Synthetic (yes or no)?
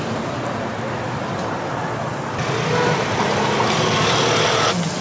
no